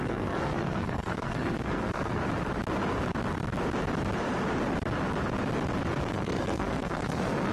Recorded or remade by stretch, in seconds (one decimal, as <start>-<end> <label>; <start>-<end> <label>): 0.0-2.2 remade; 2.2-6.0 recorded; 6.0-7.5 remade